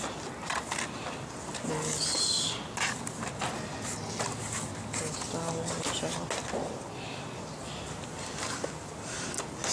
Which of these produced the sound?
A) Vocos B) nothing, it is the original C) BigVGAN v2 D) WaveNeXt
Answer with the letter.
B